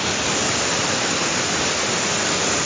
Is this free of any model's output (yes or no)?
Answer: yes